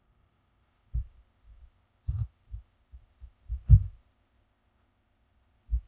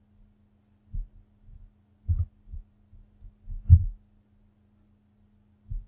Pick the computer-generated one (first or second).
first